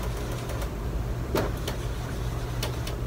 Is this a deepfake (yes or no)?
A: no